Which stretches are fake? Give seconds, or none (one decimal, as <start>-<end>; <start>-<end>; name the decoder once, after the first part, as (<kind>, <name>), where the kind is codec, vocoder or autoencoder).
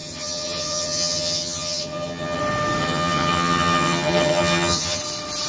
0.0-2.4 (vocoder, HiFi-GAN); 2.8-5.0